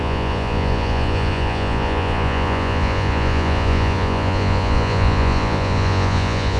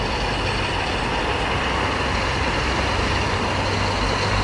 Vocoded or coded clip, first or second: first